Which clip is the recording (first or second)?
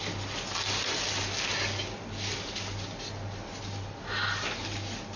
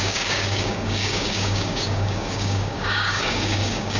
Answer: first